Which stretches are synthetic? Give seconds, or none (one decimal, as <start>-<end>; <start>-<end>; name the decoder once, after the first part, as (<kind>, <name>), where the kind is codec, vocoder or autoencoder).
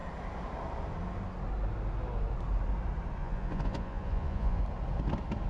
3.2-4.6 (vocoder, Vocos)